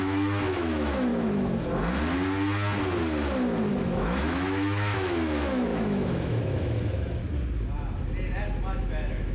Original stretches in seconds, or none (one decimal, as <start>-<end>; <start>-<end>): 1.1-3.7; 7.2-8.8

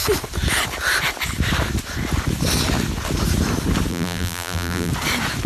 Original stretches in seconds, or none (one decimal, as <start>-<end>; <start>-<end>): 0.0-3.9; 4.9-5.5

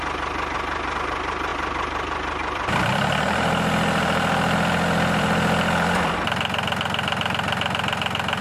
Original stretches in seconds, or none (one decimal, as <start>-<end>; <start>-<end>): 0.0-1.5; 6.1-8.4

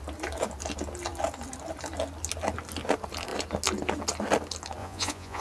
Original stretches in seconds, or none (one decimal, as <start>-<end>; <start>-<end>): 0.0-4.8

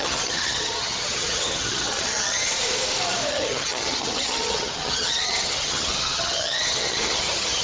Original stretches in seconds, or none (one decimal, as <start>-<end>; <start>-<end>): 2.5-3.3

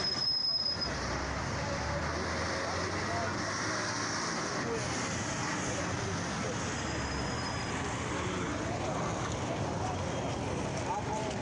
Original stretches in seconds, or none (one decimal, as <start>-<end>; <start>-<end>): 0.0-11.4